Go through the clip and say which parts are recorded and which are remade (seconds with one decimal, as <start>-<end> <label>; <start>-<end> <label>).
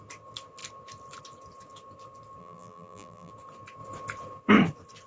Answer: 0.0-2.4 recorded; 2.4-3.3 remade; 3.3-5.1 recorded